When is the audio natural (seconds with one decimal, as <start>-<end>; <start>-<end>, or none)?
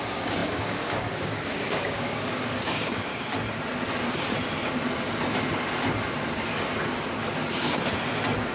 3.1-8.5